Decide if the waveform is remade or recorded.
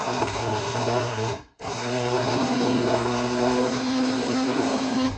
remade